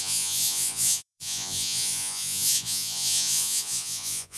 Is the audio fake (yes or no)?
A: yes